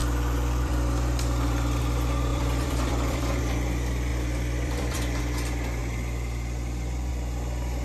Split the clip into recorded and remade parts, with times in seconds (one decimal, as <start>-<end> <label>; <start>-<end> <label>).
0.0-1.8 remade; 1.8-2.3 recorded; 2.3-3.4 remade; 3.4-4.1 recorded; 4.1-5.2 remade; 5.2-5.8 recorded; 5.8-7.1 remade; 7.1-7.8 recorded